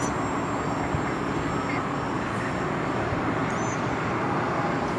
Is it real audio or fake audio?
real